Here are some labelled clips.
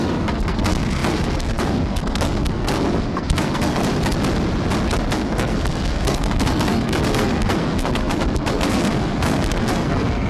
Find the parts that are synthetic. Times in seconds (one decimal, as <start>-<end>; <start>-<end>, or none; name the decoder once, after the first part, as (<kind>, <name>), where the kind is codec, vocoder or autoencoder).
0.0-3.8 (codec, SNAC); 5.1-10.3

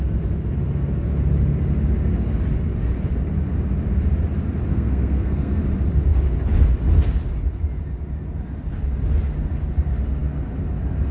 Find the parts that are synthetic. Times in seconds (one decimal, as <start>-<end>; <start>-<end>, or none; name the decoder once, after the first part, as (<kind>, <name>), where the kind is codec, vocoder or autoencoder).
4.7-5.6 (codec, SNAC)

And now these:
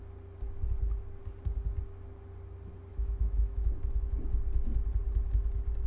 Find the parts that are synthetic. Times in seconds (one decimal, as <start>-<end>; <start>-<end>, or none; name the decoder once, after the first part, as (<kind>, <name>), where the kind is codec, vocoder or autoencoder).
2.9-4.0 (autoencoder, DAC-VAE)

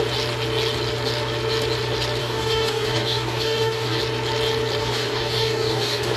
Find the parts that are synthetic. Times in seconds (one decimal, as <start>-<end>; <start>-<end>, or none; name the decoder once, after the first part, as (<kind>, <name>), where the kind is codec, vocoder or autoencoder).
2.2-4.0 (codec, DAC); 4.8-6.2

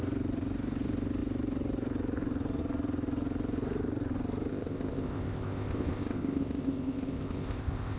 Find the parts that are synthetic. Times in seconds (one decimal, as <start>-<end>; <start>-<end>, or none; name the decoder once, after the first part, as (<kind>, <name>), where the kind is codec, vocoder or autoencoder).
4.5-8.0 (codec, ZipCodec)